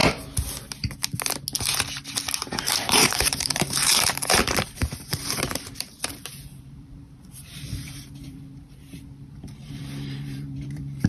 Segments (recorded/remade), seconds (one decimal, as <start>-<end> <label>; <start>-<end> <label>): 0.0-2.4 recorded; 2.4-11.1 remade